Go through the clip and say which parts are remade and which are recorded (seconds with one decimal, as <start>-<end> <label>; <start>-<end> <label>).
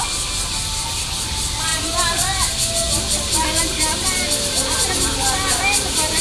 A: 0.0-6.2 recorded